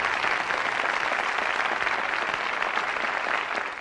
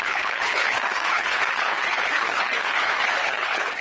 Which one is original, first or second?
first